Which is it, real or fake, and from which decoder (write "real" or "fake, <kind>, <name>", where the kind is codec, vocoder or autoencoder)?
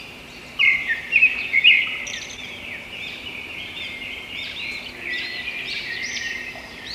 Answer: fake, vocoder, BigVGAN v2